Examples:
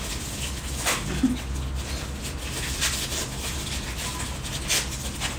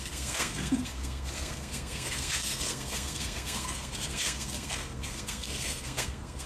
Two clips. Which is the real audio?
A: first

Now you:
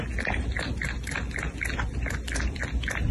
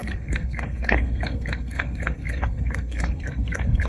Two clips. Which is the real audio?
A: first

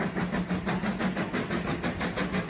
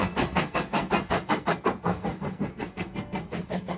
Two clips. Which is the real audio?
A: first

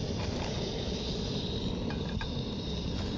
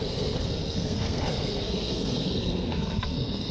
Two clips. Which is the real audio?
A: first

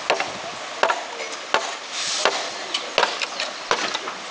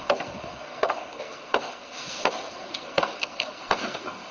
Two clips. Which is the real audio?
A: first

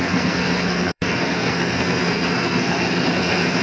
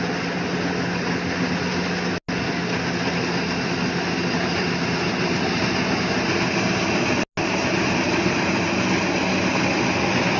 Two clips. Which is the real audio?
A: second